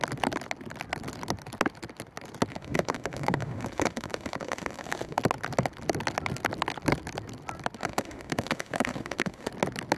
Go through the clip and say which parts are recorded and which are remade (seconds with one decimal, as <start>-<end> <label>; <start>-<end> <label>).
0.0-2.5 recorded; 2.5-5.2 remade; 5.2-7.8 recorded; 7.8-9.5 remade; 9.5-10.0 recorded